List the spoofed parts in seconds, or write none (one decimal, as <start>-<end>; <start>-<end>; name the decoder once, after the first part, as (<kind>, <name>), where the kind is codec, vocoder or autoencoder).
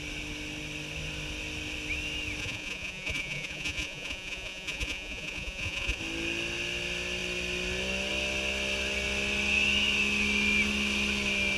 2.4-6.0 (vocoder, Vocos)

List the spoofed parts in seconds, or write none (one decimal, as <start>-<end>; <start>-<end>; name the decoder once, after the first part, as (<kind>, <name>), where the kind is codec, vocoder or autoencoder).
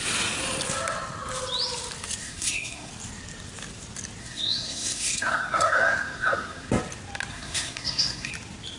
2.2-2.9 (codec, SNAC); 4.2-6.7; 7.3-8.3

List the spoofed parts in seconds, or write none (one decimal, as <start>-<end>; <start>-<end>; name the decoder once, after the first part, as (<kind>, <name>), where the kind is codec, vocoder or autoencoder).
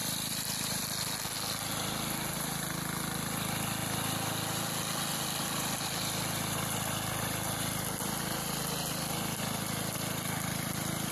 0.0-0.8 (vocoder, BigVGAN v2); 5.1-8.2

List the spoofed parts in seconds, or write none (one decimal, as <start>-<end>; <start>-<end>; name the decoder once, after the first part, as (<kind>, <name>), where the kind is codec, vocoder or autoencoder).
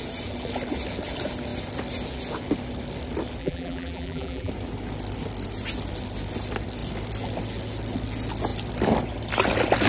3.4-4.5 (vocoder, BigVGAN v2)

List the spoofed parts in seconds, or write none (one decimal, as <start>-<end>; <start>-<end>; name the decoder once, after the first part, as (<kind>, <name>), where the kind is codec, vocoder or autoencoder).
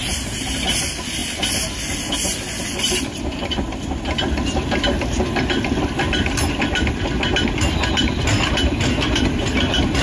none